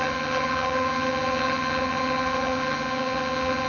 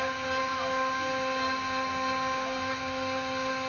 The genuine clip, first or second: second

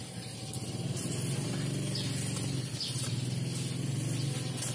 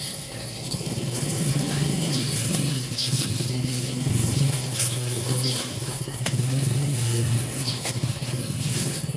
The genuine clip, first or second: first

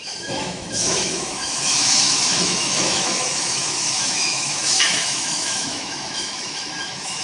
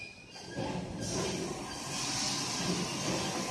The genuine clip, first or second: second